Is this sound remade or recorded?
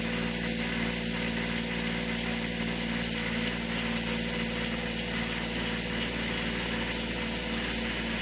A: recorded